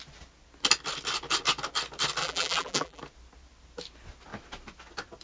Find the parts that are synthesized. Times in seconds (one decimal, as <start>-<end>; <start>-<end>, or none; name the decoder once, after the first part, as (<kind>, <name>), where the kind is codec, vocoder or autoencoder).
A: 2.2-3.0 (vocoder, BigVGAN v2)